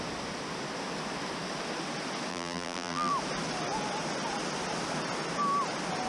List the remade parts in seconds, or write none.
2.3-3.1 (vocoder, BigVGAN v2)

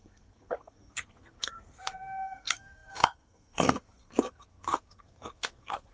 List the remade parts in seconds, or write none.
0.0-5.9 (codec, SNAC)

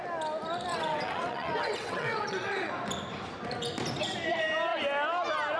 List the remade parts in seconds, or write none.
0.7-2.7 (vocoder, WaveNeXt)

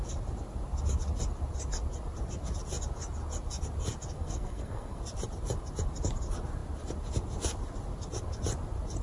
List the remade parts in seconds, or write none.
4.2-5.0 (codec, SNAC)